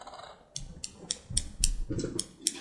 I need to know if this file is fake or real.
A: real